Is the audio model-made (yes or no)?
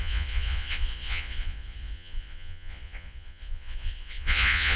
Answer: yes